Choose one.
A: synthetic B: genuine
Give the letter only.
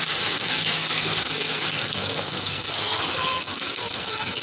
A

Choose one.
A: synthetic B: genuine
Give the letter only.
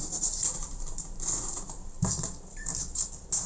B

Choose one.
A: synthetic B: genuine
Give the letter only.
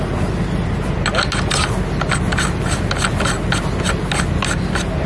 B